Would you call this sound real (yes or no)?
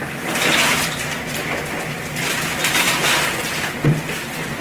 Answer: yes